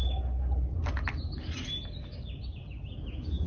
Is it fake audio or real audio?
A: real